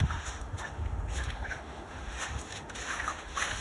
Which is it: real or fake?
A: fake